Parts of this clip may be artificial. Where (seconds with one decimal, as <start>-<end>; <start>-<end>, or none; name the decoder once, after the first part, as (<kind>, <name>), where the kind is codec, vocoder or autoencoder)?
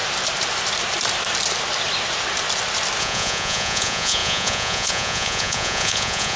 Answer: 3.0-6.4 (vocoder, Vocos)